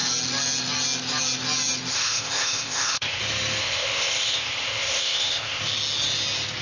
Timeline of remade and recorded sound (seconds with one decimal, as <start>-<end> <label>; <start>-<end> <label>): 0.0-1.9 recorded; 1.9-3.2 remade; 3.2-3.6 recorded; 3.6-5.6 remade; 5.6-6.6 recorded